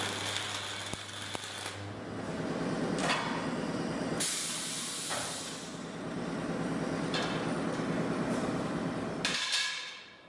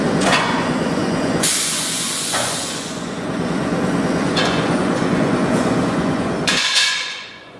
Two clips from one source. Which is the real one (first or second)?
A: first